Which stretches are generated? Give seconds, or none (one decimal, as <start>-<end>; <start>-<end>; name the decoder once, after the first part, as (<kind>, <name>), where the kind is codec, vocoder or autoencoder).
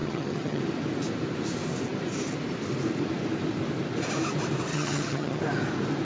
0.0-0.6 (vocoder, HiFi-GAN); 4.7-5.4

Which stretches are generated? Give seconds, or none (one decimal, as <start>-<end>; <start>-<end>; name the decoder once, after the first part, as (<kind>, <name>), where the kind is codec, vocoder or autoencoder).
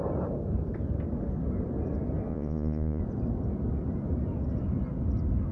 2.3-3.0 (vocoder, Vocos)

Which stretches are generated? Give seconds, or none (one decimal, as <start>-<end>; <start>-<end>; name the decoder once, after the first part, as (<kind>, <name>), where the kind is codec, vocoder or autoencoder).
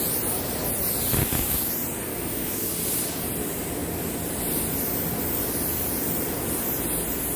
1.2-1.7 (codec, DAC); 2.1-2.7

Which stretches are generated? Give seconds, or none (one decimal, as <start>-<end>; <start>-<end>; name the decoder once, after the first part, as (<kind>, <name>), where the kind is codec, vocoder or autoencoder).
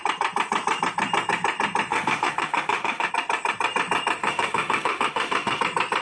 1.9-3.1 (autoencoder, DAC-VAE); 4.2-5.6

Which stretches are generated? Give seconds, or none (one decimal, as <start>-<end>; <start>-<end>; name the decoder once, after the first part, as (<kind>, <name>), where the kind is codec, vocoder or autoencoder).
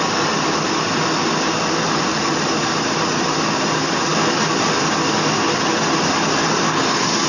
2.1-2.6 (vocoder, BigVGAN v2)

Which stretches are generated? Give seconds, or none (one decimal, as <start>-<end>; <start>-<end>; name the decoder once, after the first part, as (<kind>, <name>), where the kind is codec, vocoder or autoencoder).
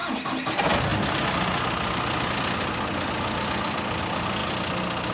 0.5-0.9 (vocoder, BigVGAN v2); 4.0-4.4